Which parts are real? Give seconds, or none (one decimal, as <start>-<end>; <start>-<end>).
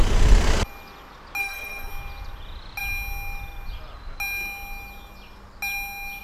0.0-1.4; 1.9-6.2